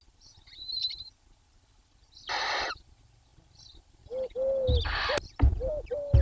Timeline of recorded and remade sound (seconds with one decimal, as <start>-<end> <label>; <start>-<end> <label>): 0.0-6.2 recorded